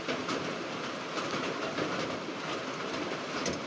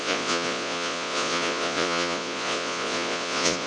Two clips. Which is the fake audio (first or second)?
second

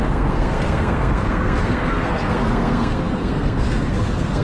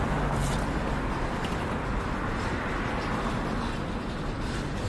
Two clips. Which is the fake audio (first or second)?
first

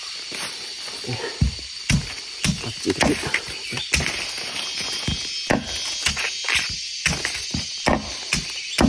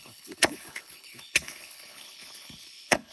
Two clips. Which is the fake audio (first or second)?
second